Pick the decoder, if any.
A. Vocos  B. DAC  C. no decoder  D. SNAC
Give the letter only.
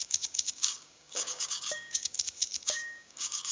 B